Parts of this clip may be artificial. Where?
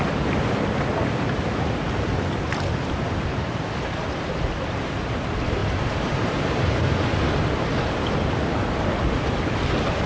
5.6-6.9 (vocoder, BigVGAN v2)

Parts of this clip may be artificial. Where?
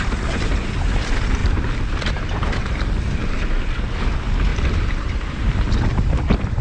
1.4-2.6 (vocoder, BigVGAN v2); 4.5-6.6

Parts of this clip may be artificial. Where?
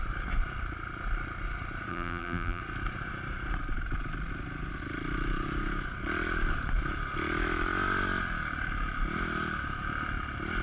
1.9-2.6 (vocoder, BigVGAN v2)